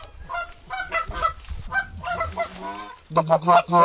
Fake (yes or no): no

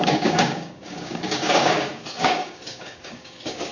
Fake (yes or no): yes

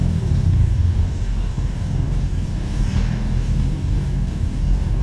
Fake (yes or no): yes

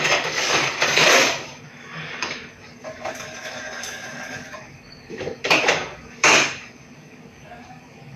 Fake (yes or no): yes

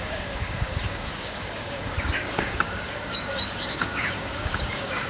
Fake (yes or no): yes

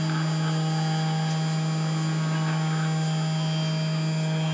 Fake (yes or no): no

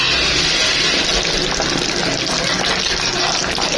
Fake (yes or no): no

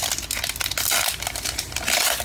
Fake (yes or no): no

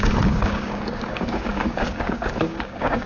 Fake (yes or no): yes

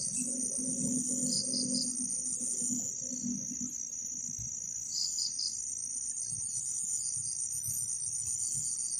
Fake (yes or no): no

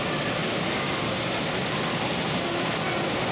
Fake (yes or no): no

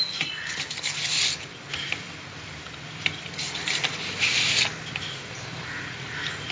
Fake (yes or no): no